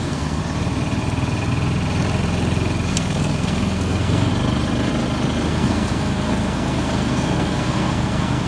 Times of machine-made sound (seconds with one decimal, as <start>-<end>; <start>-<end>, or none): 0.0-0.4; 2.9-4.3; 5.5-8.5